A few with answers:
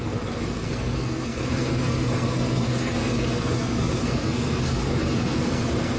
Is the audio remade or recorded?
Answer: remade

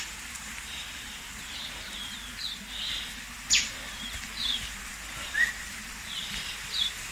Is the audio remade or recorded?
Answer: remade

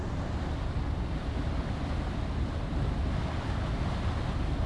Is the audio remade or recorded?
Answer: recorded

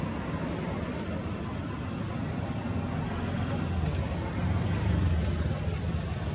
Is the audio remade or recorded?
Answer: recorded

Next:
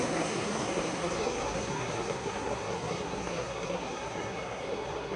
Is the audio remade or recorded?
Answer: remade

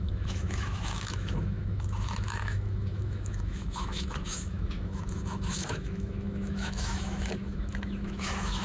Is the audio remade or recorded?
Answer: remade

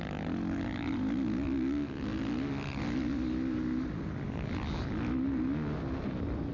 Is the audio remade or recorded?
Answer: recorded